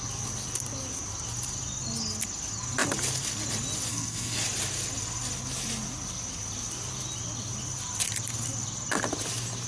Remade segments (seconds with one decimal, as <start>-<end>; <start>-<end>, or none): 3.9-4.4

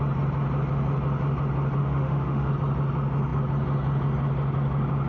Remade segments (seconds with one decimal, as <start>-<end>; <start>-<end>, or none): 1.8-2.5

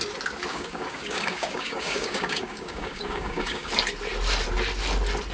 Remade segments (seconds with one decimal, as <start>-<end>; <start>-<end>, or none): 0.5-3.7